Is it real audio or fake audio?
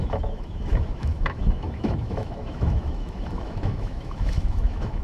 fake